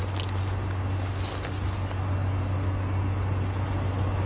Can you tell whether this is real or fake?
real